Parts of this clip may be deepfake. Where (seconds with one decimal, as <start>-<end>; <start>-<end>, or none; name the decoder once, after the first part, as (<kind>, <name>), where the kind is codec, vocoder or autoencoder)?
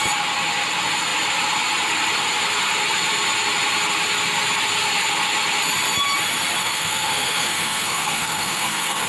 6.6-9.1 (codec, SNAC)